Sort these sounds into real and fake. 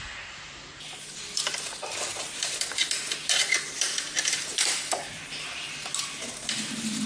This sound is real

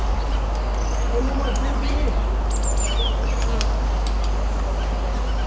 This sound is real